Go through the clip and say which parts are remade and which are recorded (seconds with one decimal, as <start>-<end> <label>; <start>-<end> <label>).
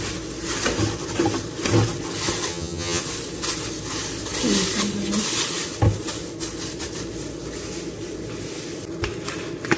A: 0.0-2.5 recorded; 2.5-3.0 remade; 3.0-9.8 recorded